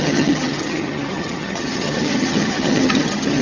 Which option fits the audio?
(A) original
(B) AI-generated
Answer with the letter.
B